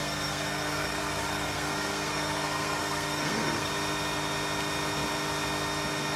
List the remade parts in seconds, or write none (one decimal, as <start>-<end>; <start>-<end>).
0.0-3.7